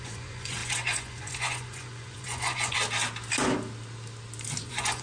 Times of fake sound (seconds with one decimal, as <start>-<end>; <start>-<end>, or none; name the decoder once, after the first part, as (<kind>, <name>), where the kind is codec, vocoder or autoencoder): 0.0-2.8 (vocoder, Vocos); 4.6-5.0